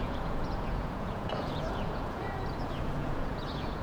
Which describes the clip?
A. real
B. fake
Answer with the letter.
B